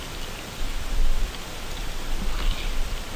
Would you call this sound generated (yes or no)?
no